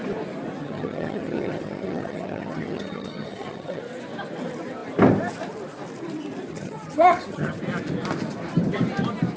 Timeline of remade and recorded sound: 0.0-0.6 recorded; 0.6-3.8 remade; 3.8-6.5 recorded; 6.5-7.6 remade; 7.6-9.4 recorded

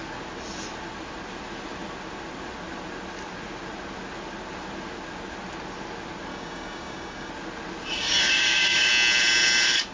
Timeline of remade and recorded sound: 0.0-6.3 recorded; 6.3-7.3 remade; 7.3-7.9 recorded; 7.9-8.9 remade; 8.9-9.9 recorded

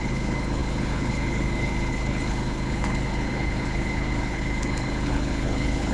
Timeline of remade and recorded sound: 0.0-5.9 remade